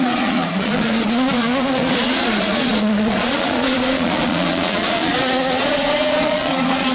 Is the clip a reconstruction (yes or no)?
yes